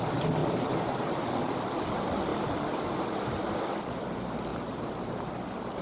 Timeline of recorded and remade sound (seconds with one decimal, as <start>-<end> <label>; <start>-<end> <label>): 0.0-0.4 recorded; 0.4-1.0 remade; 1.0-2.3 recorded; 2.3-3.0 remade; 3.0-4.5 recorded; 4.5-5.3 remade; 5.3-5.8 recorded